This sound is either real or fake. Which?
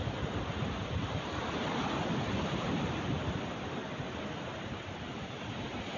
fake